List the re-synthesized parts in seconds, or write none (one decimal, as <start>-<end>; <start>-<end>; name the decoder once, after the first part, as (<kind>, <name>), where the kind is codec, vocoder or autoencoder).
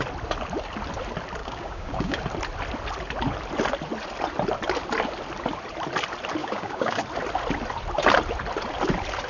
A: 1.4-2.2 (codec, DAC); 6.4-7.0